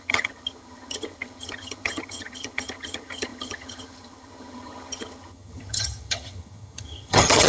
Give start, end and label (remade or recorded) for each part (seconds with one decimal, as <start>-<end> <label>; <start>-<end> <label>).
0.0-7.5 remade